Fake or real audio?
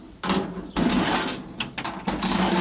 real